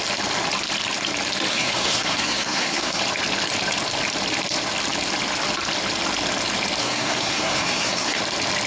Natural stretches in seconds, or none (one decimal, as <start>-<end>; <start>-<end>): 0.0-1.5; 3.0-6.8; 8.2-8.7